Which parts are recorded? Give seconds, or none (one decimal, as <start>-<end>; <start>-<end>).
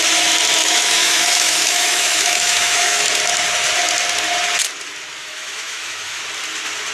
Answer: 0.0-0.6; 3.0-5.2; 6.2-6.9